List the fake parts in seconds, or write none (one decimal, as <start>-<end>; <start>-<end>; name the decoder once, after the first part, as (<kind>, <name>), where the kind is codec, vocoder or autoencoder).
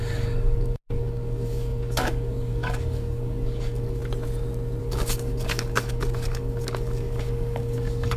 0.0-4.0 (codec, DAC); 4.8-8.2